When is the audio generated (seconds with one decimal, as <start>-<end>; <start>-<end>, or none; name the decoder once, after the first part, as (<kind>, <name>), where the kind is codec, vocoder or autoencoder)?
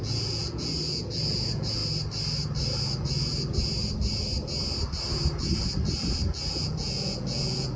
0.0-1.8 (vocoder, Vocos); 6.5-7.8